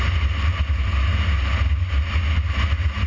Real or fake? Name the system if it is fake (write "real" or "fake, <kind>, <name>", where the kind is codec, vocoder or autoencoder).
real